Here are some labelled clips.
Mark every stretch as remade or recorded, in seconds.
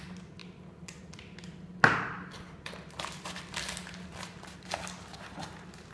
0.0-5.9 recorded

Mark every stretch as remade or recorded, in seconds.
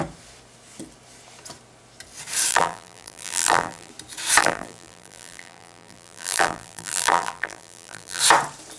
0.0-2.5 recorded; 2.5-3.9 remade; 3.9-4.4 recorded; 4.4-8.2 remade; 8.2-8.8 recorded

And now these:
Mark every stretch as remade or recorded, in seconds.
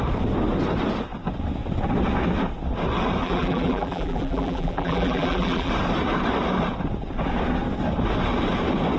0.0-3.2 recorded; 3.2-5.7 remade; 5.7-9.0 recorded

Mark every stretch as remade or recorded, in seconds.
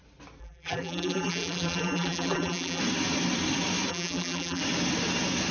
0.0-0.4 recorded; 0.4-2.8 remade; 2.8-3.9 recorded; 3.9-4.6 remade; 4.6-5.5 recorded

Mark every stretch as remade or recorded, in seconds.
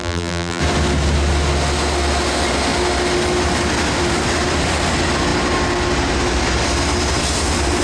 0.0-0.6 remade; 0.6-7.8 recorded